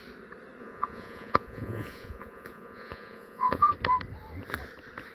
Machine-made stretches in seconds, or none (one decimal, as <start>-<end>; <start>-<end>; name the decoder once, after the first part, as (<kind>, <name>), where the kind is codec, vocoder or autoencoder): 0.6-3.7 (vocoder, Vocos)